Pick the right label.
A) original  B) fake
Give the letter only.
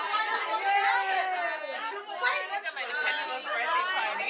A